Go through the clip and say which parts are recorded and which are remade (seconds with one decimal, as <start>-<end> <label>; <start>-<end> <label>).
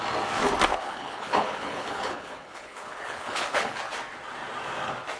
0.0-0.7 recorded; 0.7-3.8 remade; 3.8-5.2 recorded